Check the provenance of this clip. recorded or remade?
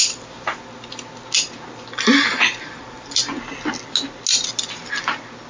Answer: recorded